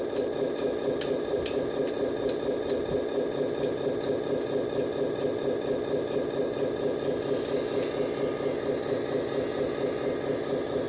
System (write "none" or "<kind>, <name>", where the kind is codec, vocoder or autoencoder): none